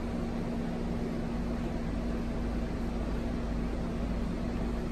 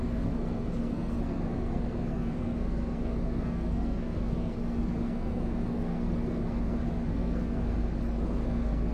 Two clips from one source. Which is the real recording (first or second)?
first